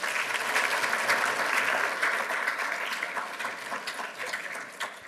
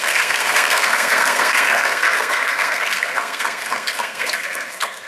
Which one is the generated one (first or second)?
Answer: second